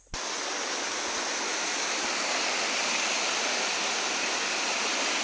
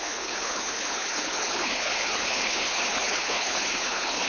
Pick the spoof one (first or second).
second